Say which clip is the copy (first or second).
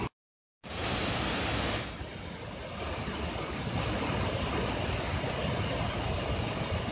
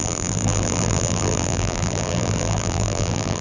second